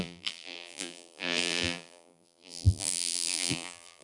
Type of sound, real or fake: fake